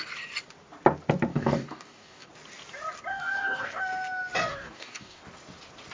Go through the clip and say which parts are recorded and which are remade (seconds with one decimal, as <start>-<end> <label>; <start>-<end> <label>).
0.0-1.3 recorded; 1.3-2.3 remade; 2.3-3.1 recorded; 3.1-3.8 remade; 3.8-4.5 recorded; 4.5-5.2 remade; 5.2-5.9 recorded

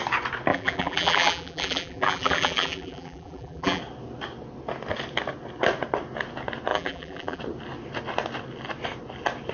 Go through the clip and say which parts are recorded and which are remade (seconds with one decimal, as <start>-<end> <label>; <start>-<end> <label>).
0.0-0.5 recorded; 0.5-3.8 remade; 3.8-6.7 recorded; 6.7-7.4 remade; 7.4-9.5 recorded

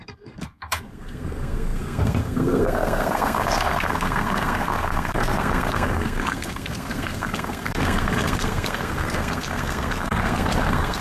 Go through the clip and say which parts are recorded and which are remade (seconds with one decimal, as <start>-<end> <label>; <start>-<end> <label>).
0.0-11.0 remade

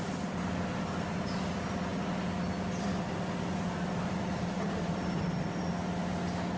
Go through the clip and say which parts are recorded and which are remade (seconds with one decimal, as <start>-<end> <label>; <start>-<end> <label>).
0.0-6.6 recorded